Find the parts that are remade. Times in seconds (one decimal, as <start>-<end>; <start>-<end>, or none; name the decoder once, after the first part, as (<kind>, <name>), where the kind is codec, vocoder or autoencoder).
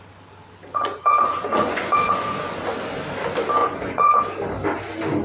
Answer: 0.7-2.5 (vocoder, Vocos); 3.6-4.2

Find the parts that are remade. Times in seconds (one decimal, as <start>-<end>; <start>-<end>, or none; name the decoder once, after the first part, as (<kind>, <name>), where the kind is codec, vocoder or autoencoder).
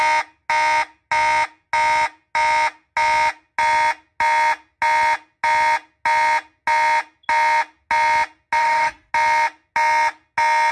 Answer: 8.6-9.1 (autoencoder, DAC-VAE)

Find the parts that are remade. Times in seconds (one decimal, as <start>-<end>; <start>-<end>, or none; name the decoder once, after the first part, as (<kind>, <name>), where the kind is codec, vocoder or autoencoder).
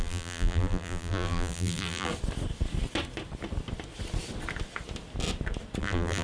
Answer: 0.0-2.1 (vocoder, BigVGAN v2); 5.8-6.2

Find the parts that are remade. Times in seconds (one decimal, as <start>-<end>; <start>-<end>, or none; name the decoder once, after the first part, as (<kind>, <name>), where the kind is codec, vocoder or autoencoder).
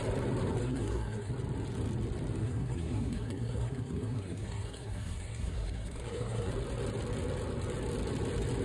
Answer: 0.6-1.3 (codec, SNAC); 2.4-6.5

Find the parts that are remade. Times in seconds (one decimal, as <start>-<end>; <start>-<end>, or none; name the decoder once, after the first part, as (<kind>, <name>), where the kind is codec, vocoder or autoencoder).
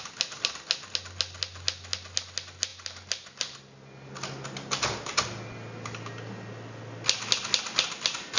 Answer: none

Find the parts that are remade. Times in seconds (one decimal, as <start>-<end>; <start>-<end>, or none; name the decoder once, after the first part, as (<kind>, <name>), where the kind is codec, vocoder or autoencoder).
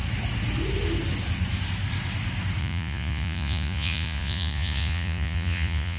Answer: 2.6-6.0 (vocoder, Vocos)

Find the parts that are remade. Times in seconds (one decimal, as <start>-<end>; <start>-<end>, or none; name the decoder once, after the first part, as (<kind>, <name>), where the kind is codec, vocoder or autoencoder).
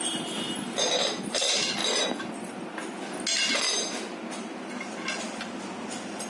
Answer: none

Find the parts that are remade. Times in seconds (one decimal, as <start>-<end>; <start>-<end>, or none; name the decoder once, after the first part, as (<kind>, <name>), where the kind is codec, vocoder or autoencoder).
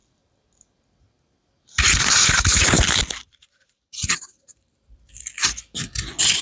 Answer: 3.1-5.3 (vocoder, BigVGAN v2)